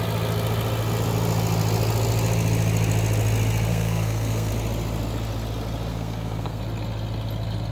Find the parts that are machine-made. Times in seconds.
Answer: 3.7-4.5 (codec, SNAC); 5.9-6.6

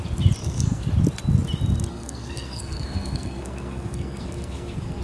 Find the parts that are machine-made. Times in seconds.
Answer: 0.4-0.9 (codec, SNAC); 1.9-5.0

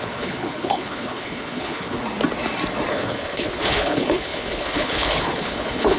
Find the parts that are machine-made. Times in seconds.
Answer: 0.0-2.0 (codec, HILCodec); 2.9-6.0

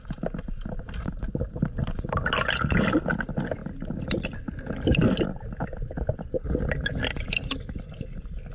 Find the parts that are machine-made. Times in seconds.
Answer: none

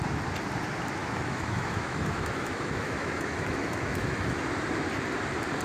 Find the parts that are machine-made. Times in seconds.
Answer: 1.0-4.4 (autoencoder, DAC-VAE)

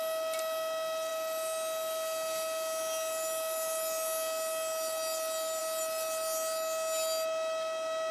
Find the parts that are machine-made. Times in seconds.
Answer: none

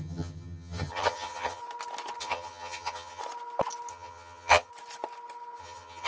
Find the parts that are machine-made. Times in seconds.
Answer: 0.0-1.6 (vocoder, HiFi-GAN); 2.2-3.2; 3.9-4.7; 5.6-6.1